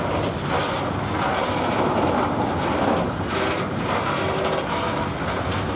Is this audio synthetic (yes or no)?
no